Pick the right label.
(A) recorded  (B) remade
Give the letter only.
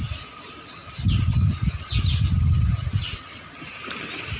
B